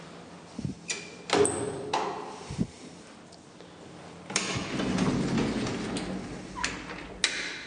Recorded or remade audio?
recorded